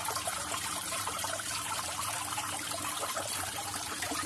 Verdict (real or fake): fake